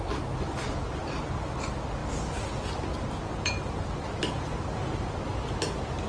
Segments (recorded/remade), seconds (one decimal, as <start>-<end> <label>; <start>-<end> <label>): 0.0-6.1 recorded